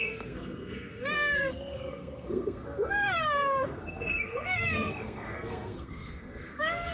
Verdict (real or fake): fake